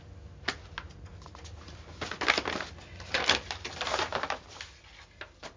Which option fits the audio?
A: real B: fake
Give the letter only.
A